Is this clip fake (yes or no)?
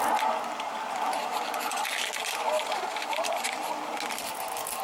no